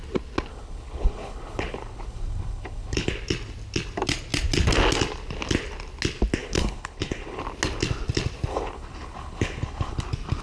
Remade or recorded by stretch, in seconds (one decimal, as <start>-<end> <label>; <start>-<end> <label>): 0.0-0.5 recorded; 0.5-3.1 remade; 3.1-6.4 recorded; 6.4-7.4 remade; 7.4-8.5 recorded; 8.5-10.0 remade; 10.0-10.4 recorded

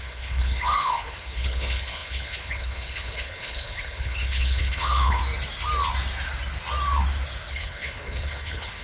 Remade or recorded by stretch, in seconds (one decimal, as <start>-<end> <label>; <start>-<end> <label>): 0.0-5.2 remade; 5.2-7.5 recorded; 7.5-8.8 remade

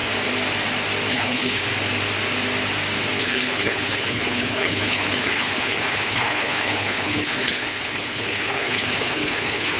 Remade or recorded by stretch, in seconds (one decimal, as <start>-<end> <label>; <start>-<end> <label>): 0.0-1.1 recorded; 1.1-1.6 remade; 1.6-3.2 recorded; 3.2-9.8 remade

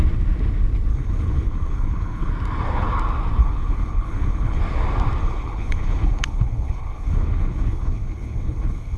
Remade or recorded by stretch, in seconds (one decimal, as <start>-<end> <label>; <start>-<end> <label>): 0.0-0.9 recorded; 0.9-2.3 remade; 2.3-3.4 recorded; 3.4-4.6 remade; 4.6-5.2 recorded; 5.2-9.0 remade

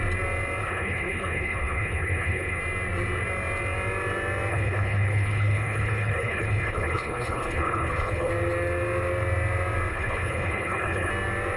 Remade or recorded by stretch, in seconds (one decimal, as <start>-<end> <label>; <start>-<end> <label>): 0.0-0.6 recorded; 0.6-2.6 remade; 2.6-4.5 recorded; 4.5-8.3 remade; 8.3-9.9 recorded; 9.9-11.1 remade; 11.1-11.6 recorded

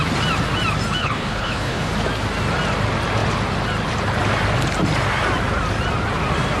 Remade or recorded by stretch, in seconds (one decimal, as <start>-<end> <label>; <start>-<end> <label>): 0.0-1.0 recorded; 1.0-1.9 remade; 1.9-6.6 recorded

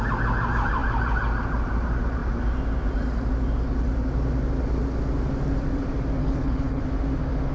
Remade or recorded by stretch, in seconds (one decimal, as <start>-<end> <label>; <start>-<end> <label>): 0.0-6.2 recorded; 6.2-6.8 remade; 6.8-7.5 recorded